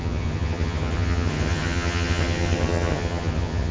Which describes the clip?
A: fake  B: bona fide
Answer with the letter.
A